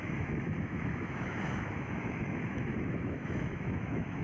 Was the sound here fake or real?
fake